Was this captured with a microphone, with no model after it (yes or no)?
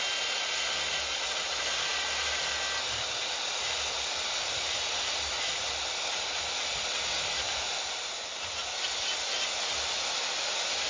yes